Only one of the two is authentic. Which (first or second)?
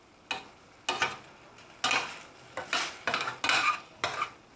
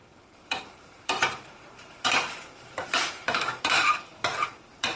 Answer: first